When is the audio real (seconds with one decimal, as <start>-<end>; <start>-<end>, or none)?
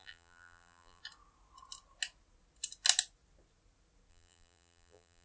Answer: 1.0-4.1